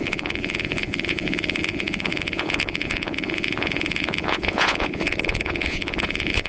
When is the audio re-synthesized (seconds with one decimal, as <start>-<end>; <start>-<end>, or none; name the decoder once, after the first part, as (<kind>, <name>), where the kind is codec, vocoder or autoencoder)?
0.0-6.5 (vocoder, Vocos)